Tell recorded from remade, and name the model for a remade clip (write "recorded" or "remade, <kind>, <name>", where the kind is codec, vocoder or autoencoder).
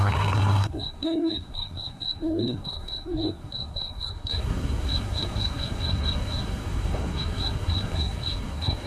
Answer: remade, codec, SNAC